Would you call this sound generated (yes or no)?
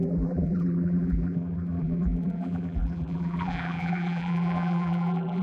yes